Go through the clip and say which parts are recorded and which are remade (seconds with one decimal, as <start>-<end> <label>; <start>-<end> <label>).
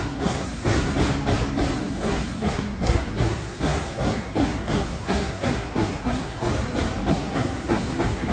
0.0-0.9 remade; 0.9-1.8 recorded; 1.8-6.5 remade; 6.5-7.1 recorded; 7.1-8.3 remade